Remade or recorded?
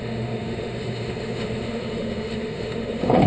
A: remade